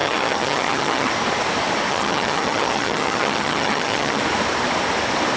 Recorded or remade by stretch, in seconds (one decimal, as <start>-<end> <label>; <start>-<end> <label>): 0.0-1.1 remade; 1.1-1.9 recorded; 1.9-4.2 remade; 4.2-5.4 recorded

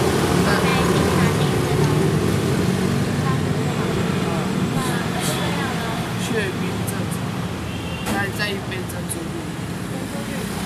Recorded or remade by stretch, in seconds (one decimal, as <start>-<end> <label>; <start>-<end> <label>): 0.0-10.7 recorded

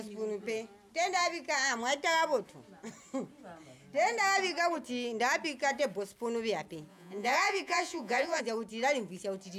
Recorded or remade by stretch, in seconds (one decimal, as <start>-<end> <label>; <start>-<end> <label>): 0.0-6.9 recorded; 6.9-8.4 remade; 8.4-9.6 recorded

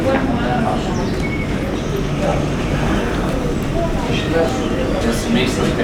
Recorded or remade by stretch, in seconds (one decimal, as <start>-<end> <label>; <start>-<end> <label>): 0.0-3.7 recorded; 3.7-4.3 remade; 4.3-5.8 recorded